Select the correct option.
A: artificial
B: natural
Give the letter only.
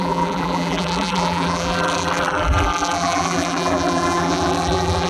A